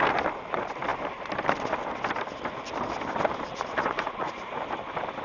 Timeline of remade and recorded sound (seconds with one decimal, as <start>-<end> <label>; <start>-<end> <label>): 0.0-3.5 recorded; 3.5-4.6 remade; 4.6-5.2 recorded